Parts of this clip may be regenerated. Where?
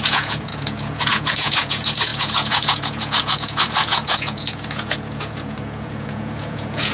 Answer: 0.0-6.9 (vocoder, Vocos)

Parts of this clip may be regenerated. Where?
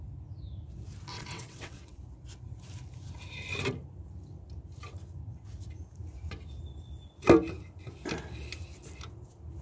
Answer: 1.1-2.0 (vocoder, WaveNeXt)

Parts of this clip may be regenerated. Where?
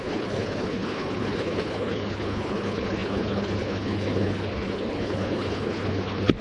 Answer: 0.0-6.4 (codec, HILCodec)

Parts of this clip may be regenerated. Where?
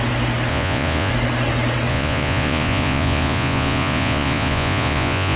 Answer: 0.5-1.1 (vocoder, Vocos); 1.9-5.4